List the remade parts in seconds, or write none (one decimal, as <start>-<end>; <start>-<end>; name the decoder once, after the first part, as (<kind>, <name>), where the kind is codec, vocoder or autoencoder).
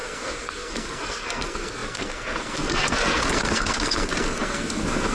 0.0-5.1 (codec, SNAC)